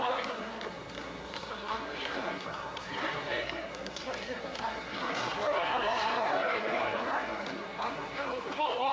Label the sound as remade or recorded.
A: remade